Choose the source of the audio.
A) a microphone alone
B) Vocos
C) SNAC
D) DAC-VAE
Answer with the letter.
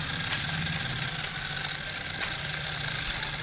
A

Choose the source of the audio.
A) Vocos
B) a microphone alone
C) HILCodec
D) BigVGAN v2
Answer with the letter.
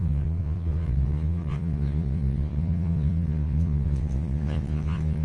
A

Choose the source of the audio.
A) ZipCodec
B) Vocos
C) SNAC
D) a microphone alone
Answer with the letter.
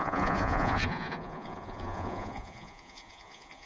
B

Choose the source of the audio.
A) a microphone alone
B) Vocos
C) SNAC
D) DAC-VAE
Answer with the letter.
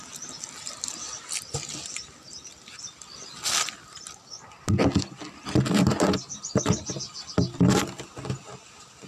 A